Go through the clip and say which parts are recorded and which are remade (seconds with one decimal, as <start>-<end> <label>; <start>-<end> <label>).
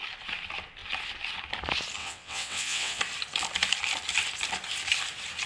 0.0-2.0 recorded; 2.0-3.0 remade; 3.0-5.5 recorded